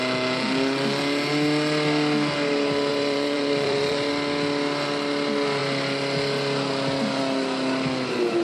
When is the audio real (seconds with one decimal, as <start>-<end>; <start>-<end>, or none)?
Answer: 0.0-2.9; 4.1-8.4